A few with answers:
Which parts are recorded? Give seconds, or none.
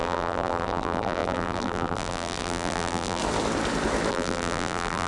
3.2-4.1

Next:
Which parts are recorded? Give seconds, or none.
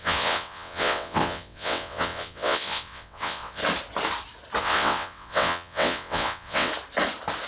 3.6-4.6; 6.7-7.5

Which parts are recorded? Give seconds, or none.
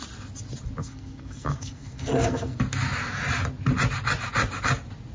0.0-0.8; 2.6-5.1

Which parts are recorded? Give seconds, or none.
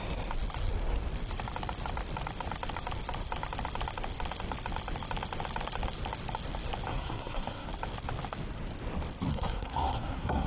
0.0-6.9; 7.7-9.3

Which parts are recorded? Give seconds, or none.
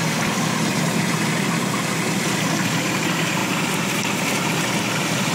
3.4-4.4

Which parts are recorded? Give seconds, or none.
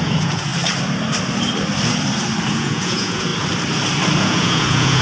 0.5-2.5; 3.3-4.2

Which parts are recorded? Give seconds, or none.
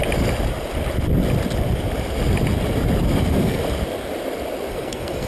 0.0-3.2; 3.6-4.7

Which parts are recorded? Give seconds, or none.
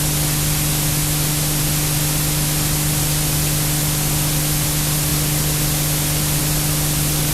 0.0-7.3